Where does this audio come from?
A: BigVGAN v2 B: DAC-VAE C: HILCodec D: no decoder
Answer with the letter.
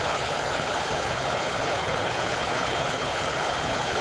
C